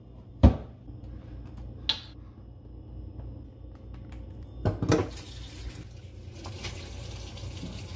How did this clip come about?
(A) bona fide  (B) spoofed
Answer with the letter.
A